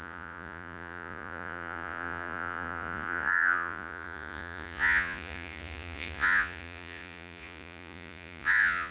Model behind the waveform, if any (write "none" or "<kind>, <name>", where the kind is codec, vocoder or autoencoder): vocoder, Vocos